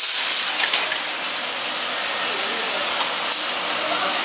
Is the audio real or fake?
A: real